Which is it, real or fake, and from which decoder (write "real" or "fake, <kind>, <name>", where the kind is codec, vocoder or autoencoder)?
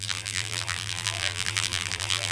fake, vocoder, BigVGAN v2